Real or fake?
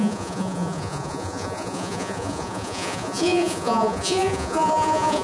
fake